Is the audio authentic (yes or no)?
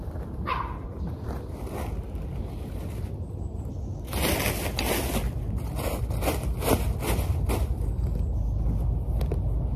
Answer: yes